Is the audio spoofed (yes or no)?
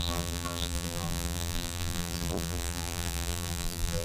yes